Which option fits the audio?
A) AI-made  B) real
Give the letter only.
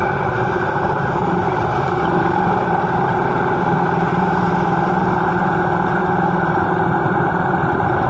A